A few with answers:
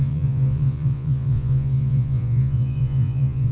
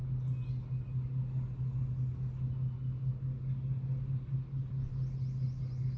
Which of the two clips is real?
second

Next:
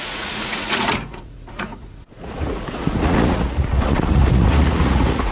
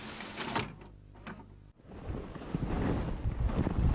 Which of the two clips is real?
second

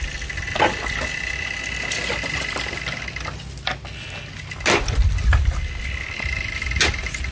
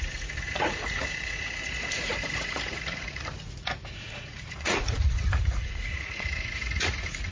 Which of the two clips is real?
first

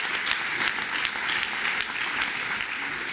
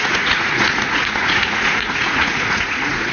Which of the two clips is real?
first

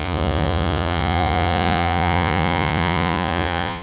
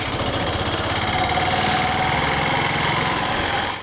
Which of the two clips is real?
second